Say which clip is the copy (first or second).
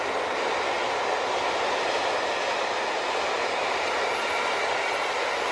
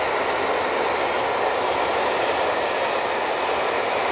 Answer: first